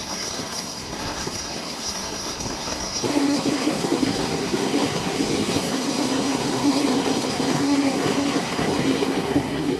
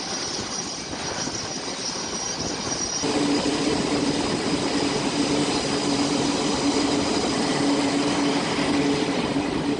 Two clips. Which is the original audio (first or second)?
second